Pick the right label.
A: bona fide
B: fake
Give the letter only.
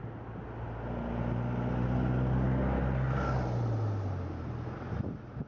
A